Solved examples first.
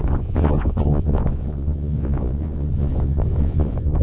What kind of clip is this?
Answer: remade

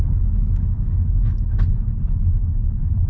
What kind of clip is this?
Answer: remade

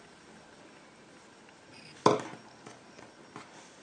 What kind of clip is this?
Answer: recorded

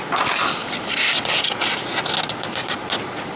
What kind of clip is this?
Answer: recorded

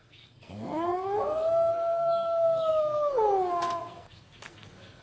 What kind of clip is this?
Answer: remade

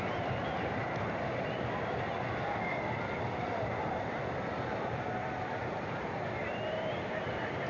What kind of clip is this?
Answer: recorded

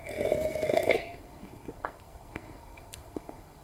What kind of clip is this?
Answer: remade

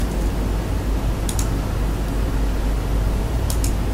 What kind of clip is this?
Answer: recorded